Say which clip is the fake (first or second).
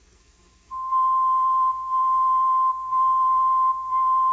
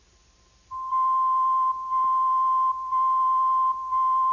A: first